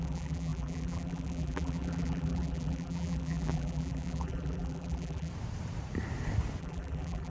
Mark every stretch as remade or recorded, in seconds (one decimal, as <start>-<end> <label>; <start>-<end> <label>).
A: 0.0-5.3 remade; 5.3-6.6 recorded; 6.6-7.3 remade